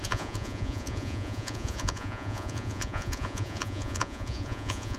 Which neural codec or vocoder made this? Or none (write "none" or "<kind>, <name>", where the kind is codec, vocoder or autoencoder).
vocoder, Vocos